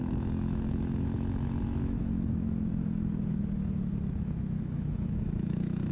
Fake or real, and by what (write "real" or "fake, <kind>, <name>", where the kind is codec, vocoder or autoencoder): fake, autoencoder, DAC-VAE